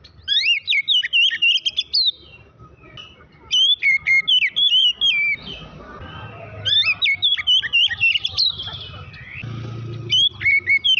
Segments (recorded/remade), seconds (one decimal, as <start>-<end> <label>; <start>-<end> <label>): 0.0-11.0 recorded